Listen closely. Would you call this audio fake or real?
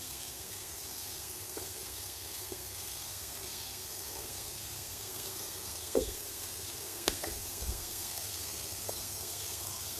fake